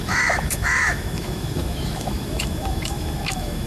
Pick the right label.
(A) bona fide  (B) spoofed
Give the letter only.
B